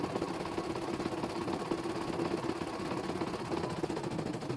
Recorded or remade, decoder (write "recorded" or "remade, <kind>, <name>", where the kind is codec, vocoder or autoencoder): recorded